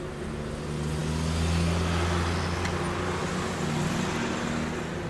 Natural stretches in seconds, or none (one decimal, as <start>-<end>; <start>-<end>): 0.0-5.1

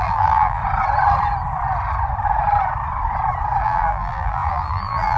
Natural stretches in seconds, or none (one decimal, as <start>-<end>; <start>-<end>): 0.6-3.6

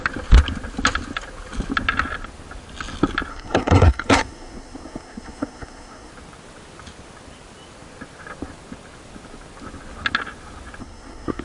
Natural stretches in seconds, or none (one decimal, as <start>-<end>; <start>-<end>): 0.0-3.3; 6.1-10.8

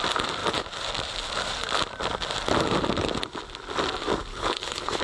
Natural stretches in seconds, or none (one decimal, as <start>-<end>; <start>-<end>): 0.0-4.3

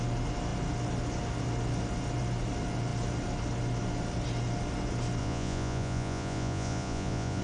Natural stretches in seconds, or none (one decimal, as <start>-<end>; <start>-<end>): 0.0-5.2

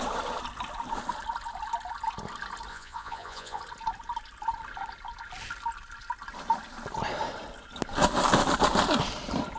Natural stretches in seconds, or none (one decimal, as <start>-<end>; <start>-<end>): 0.0-2.7; 3.6-9.6